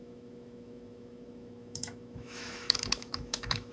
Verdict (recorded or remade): remade